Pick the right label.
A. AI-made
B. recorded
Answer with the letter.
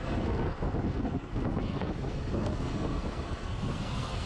A